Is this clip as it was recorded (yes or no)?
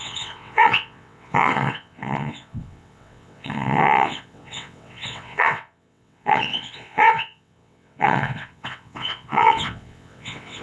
no